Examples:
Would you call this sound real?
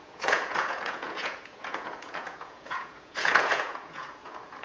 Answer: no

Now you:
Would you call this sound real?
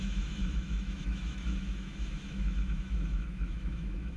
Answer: no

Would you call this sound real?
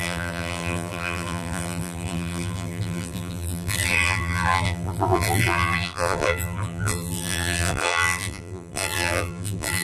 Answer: no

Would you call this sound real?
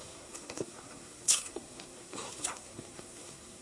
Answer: no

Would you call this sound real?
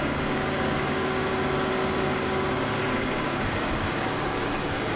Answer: no